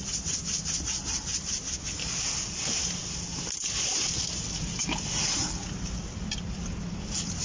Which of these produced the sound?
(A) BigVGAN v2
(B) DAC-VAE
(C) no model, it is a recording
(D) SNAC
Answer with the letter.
C